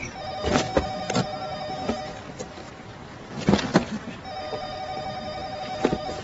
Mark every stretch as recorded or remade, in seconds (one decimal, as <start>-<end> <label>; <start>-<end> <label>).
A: 0.0-0.7 remade; 0.7-2.3 recorded; 2.3-2.9 remade; 2.9-4.5 recorded; 4.5-6.2 remade